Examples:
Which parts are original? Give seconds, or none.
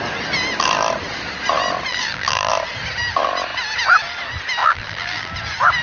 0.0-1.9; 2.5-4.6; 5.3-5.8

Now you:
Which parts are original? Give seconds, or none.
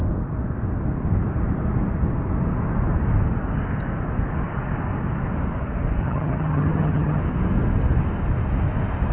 0.0-6.0; 7.2-9.1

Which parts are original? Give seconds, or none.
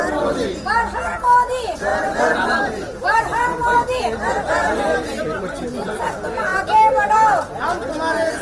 0.0-1.9; 4.0-6.5; 7.5-8.4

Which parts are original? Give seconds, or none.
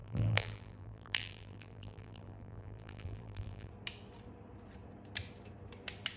3.7-6.2